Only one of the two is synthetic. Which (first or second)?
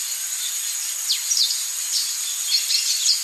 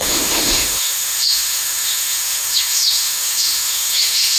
second